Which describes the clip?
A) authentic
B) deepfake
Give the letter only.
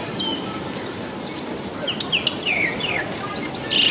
A